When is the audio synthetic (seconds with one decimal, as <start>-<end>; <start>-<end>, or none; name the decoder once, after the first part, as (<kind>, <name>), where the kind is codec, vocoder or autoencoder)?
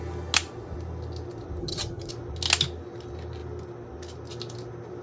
1.6-2.1 (vocoder, HiFi-GAN)